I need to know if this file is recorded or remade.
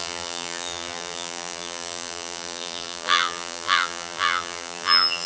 remade